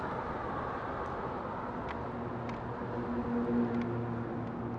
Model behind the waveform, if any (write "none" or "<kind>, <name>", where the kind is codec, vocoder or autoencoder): none